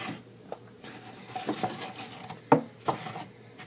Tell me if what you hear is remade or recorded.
recorded